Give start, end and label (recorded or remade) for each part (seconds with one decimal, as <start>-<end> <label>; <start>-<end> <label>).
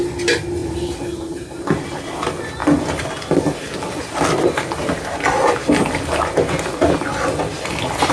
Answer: 0.0-8.1 recorded